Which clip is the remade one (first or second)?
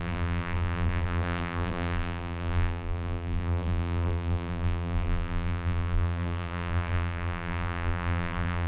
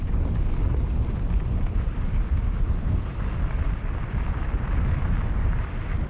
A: first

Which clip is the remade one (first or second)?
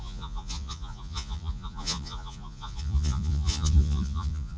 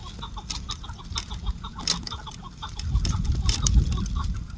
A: first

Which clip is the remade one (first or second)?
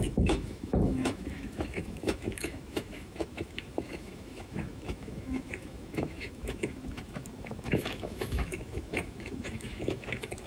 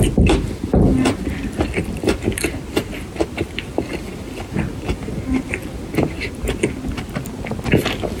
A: first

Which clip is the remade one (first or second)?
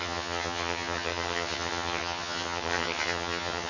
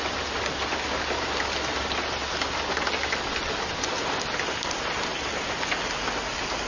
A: first